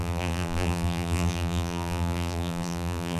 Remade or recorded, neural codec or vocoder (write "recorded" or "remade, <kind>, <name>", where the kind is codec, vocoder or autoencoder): remade, vocoder, BigVGAN v2